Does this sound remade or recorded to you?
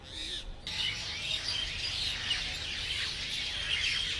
recorded